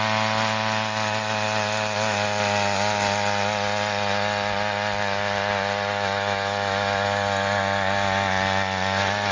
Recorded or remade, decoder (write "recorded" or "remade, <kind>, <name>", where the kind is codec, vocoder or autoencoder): recorded